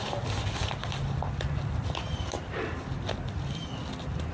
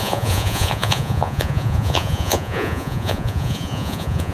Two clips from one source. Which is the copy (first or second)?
second